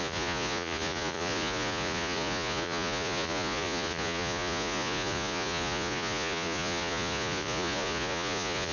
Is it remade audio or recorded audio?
remade